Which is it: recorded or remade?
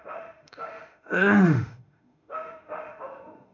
remade